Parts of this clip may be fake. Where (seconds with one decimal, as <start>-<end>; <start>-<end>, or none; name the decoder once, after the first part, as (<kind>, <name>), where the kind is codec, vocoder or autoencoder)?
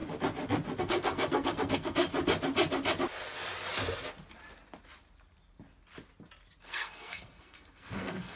0.8-2.1 (codec, SNAC); 6.6-8.4